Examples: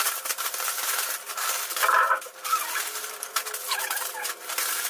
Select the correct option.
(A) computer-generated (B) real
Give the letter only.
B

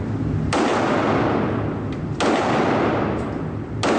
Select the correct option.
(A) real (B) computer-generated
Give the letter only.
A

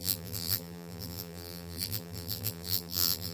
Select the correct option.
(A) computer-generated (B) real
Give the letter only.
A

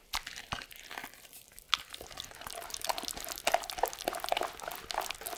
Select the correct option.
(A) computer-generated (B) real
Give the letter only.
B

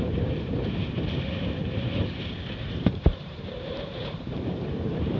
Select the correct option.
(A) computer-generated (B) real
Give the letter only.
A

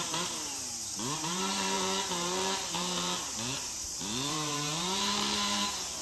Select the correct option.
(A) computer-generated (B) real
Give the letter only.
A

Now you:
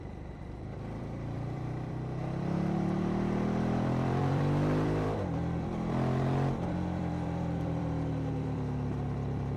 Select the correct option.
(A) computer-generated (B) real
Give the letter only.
A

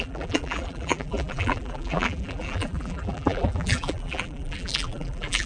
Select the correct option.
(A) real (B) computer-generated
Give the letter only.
B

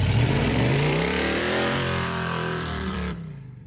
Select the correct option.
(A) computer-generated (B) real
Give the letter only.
A